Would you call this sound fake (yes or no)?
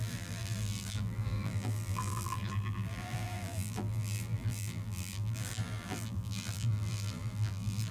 yes